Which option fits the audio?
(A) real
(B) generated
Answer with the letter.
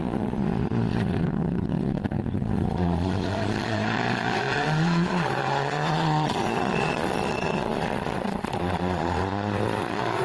B